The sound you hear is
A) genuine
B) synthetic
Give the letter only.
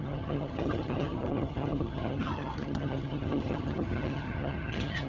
B